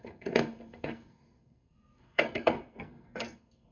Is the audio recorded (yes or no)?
no